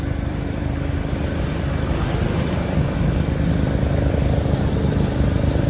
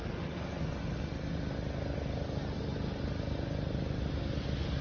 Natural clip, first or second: second